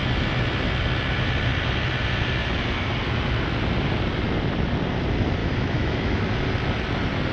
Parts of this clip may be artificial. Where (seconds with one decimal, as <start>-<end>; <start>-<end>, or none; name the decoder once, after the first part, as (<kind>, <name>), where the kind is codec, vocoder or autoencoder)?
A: 5.4-6.2 (autoencoder, DAC-VAE)